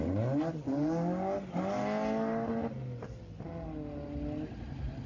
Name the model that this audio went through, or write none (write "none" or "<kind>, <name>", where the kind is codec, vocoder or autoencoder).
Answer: none